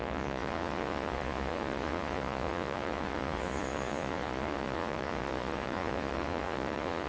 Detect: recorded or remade remade